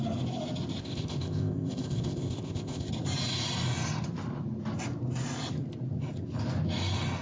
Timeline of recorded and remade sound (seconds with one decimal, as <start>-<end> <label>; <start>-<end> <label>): 0.0-0.8 recorded; 0.8-2.9 remade; 2.9-7.2 recorded